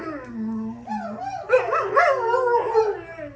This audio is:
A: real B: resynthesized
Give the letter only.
A